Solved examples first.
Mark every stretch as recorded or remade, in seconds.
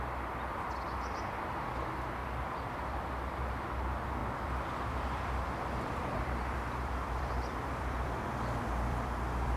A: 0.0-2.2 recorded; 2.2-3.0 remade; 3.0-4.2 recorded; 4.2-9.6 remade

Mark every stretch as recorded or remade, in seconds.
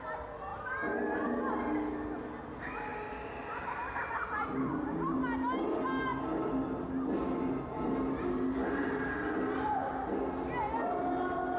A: 0.0-11.6 recorded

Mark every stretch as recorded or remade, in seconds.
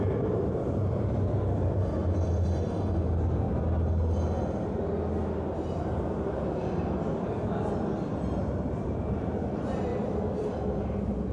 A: 0.0-2.0 remade; 2.0-5.5 recorded; 5.5-6.6 remade; 6.6-8.4 recorded; 8.4-11.3 remade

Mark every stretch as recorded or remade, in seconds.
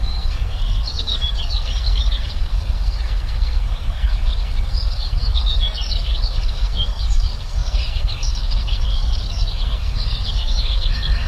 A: 0.0-11.3 remade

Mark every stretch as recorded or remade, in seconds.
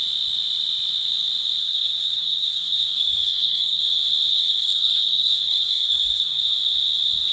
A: 0.0-1.6 recorded; 1.6-3.8 remade; 3.8-4.3 recorded; 4.3-6.4 remade; 6.4-7.3 recorded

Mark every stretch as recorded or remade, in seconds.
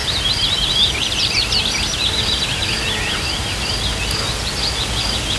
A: 0.0-5.4 recorded